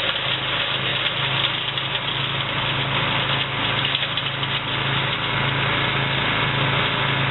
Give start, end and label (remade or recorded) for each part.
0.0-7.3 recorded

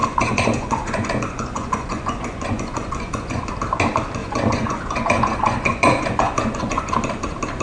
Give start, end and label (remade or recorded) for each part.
0.0-3.5 remade; 3.5-4.2 recorded; 4.2-6.9 remade; 6.9-7.6 recorded

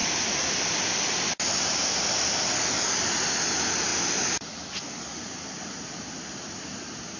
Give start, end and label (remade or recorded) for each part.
0.0-7.2 recorded

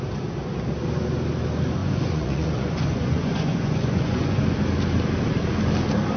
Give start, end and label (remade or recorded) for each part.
0.0-1.8 recorded; 1.8-4.4 remade; 4.4-6.2 recorded

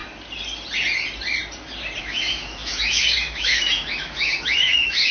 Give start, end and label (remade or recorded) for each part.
0.0-2.0 recorded; 2.0-5.1 remade